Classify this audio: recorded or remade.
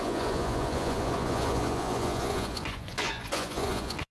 remade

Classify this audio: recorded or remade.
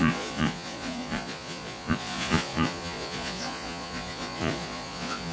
remade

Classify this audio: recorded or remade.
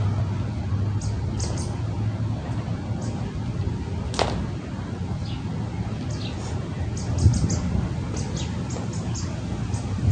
recorded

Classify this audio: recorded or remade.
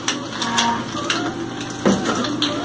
recorded